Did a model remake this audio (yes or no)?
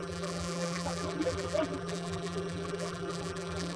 yes